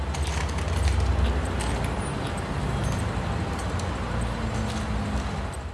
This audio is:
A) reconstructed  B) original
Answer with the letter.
B